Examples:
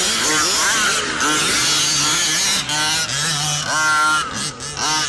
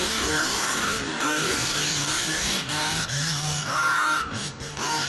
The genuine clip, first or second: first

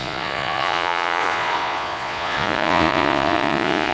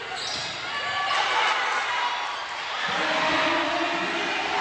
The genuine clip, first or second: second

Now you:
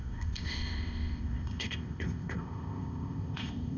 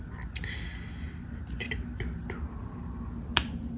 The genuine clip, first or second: second